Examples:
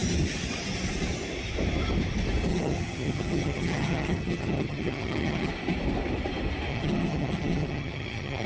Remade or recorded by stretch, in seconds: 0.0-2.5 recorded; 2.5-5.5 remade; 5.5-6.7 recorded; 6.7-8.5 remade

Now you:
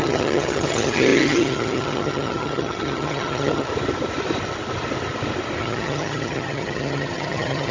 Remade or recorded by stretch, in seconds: 0.0-3.7 remade; 3.7-5.6 recorded; 5.6-7.7 remade

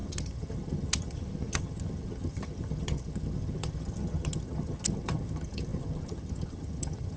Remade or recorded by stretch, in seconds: 0.0-7.2 remade

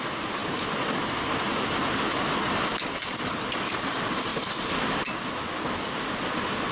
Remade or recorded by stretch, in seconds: 0.0-6.7 recorded

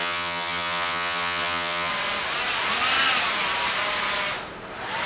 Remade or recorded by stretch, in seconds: 0.0-1.9 remade; 1.9-5.1 recorded